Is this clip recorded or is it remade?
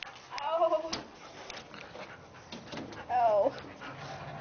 recorded